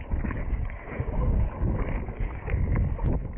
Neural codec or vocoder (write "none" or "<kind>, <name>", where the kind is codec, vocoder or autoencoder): codec, DAC